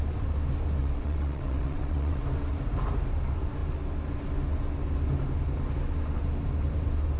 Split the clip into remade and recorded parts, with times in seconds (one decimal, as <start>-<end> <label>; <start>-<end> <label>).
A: 0.0-0.8 recorded; 0.8-2.2 remade; 2.2-7.2 recorded